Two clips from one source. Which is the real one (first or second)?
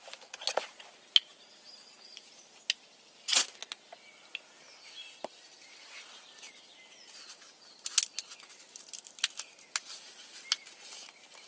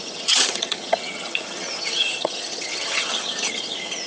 first